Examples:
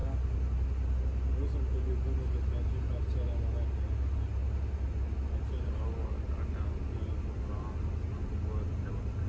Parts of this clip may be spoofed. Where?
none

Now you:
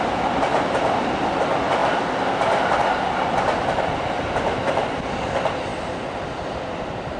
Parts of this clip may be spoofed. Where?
none

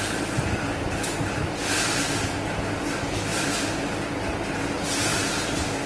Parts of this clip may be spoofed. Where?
none

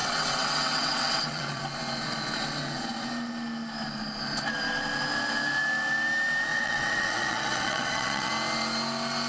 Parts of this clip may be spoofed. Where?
0.0-1.6; 6.5-8.3

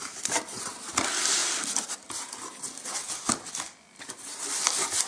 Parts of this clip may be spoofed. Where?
none

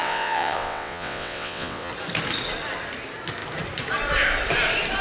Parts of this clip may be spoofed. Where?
0.0-1.9